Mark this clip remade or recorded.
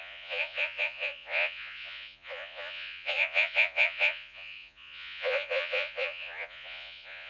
remade